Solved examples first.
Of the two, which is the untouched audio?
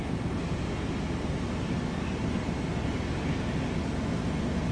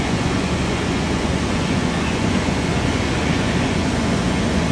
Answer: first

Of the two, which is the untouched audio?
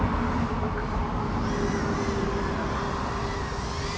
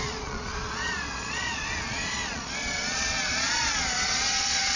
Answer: first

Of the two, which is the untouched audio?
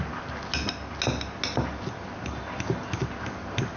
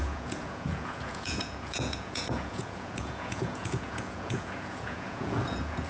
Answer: first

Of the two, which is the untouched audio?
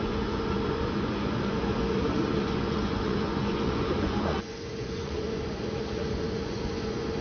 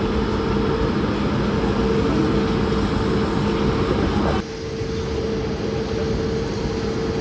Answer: second